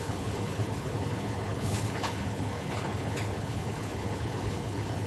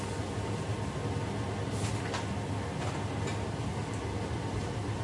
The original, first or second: second